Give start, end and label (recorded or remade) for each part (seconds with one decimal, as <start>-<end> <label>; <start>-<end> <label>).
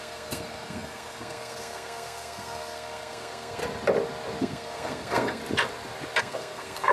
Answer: 0.0-3.6 remade; 3.6-4.4 recorded; 4.4-5.4 remade; 5.4-6.2 recorded; 6.2-6.9 remade